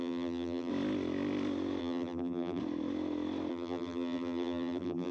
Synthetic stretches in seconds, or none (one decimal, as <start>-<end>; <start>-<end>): 0.0-0.7; 1.8-2.6; 3.5-5.1

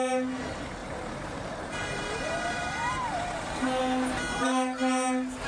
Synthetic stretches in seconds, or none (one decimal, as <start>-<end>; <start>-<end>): 0.8-3.8

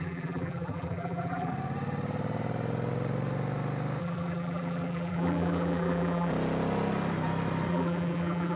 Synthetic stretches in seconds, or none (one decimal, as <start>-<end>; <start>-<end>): 0.0-1.5; 4.0-6.3; 7.7-8.6

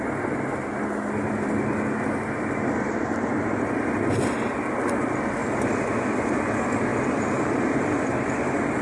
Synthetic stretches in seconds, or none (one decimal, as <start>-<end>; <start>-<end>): 5.4-5.9; 6.9-8.3

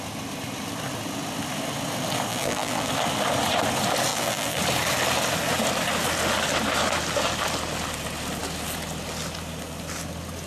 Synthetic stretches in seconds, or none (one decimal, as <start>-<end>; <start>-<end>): 2.3-2.9; 4.1-4.6

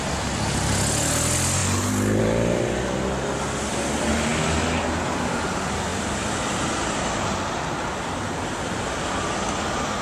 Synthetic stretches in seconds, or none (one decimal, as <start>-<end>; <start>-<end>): 1.6-2.2; 5.9-7.1